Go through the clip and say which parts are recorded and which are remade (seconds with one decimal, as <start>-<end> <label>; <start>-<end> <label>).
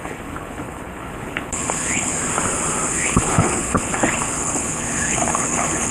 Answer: 0.0-2.1 remade; 2.1-2.9 recorded; 2.9-5.9 remade